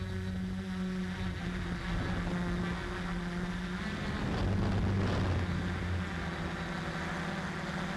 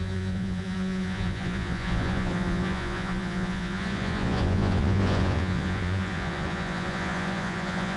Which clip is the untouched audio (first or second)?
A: first